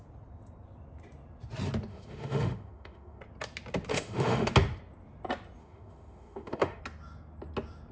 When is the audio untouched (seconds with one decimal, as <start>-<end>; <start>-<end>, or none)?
0.0-1.9; 3.2-3.9; 4.5-5.6; 6.8-7.9